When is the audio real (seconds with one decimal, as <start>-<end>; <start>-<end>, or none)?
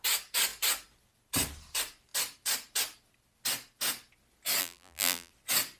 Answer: 0.0-4.6; 5.3-5.8